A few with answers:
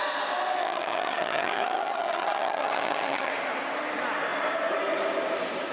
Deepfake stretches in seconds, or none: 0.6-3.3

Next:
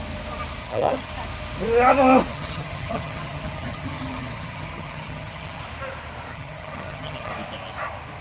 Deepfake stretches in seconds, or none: 0.6-1.1; 2.3-5.6; 6.3-7.3

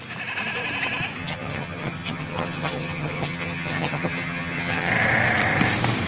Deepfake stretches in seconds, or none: 1.2-4.9

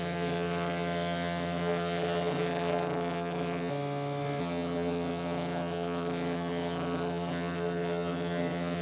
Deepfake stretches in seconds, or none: 0.0-3.7; 4.4-8.8

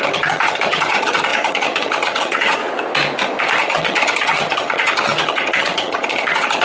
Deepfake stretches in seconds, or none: 0.0-2.6; 3.6-6.6

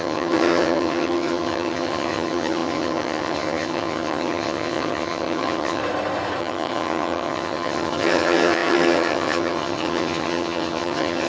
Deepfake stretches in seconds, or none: 0.0-5.8; 6.4-11.3

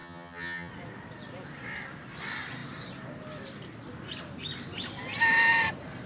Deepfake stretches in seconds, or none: 0.0-0.7